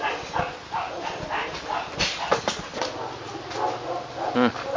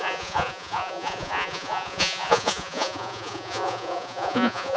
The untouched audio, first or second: first